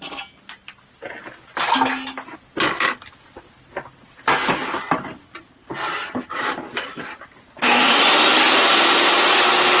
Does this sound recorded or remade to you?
recorded